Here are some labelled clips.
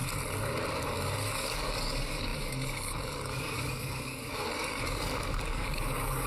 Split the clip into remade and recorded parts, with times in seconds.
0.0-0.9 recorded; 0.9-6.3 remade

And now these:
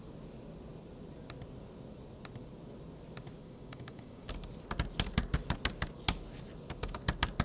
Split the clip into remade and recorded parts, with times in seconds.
0.0-3.4 recorded; 3.4-4.3 remade; 4.3-7.4 recorded